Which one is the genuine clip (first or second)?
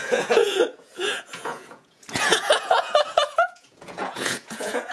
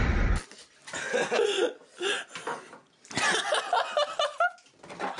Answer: second